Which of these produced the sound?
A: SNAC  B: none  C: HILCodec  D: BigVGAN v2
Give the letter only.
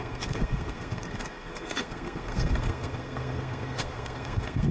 A